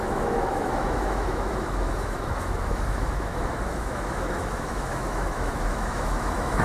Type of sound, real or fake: fake